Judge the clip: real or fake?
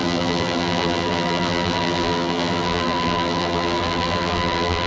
fake